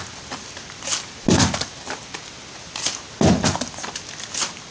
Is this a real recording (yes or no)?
yes